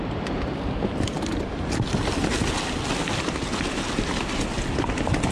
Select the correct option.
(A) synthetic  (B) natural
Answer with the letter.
B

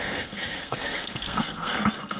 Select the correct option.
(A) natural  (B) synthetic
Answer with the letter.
B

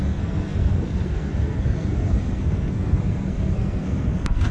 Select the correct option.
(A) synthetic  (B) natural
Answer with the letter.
A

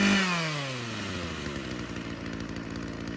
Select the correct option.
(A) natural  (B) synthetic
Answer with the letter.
A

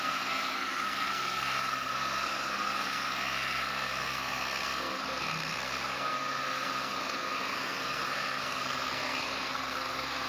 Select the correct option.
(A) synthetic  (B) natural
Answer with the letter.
A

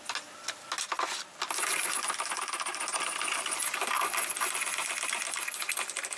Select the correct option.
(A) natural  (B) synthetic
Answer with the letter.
A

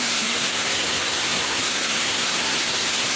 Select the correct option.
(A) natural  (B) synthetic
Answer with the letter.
B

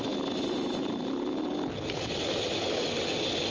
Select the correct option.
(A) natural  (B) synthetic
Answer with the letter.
A